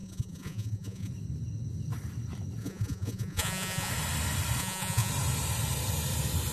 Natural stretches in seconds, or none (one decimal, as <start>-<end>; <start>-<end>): 1.1-2.6; 3.9-4.6; 5.1-6.5